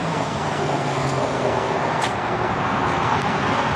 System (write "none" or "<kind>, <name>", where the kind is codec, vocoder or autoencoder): codec, SNAC